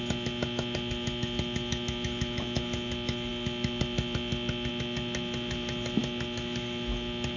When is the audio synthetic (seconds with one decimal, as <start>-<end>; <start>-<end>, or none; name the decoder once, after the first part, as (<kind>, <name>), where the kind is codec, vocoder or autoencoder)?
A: none